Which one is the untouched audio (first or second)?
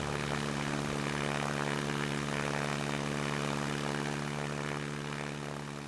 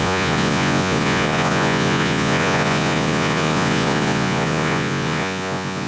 first